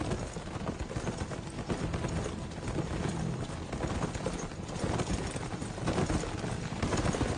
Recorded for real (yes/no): yes